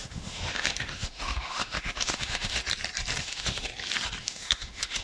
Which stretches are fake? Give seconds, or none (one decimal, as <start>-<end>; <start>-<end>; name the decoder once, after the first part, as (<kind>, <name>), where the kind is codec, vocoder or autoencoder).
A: 0.0-2.6 (autoencoder, DAC-VAE); 3.2-3.7; 4.2-5.0